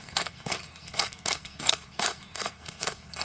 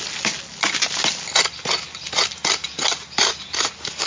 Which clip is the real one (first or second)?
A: second